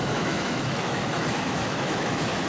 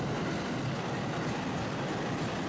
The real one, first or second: second